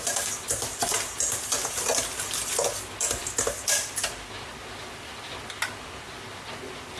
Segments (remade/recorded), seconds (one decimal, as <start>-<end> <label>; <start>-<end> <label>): 0.0-7.0 recorded